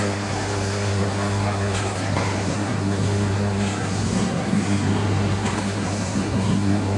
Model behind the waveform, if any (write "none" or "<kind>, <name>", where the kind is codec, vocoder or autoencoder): codec, SNAC